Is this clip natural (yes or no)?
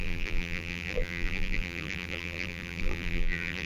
no